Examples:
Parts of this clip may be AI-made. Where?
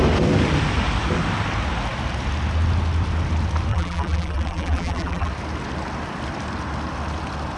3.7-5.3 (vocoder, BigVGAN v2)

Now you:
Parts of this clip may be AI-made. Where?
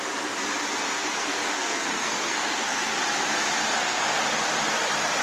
1.0-2.9 (codec, SNAC); 3.7-4.2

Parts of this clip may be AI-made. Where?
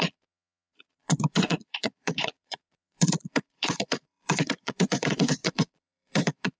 0.0-6.6 (vocoder, Vocos)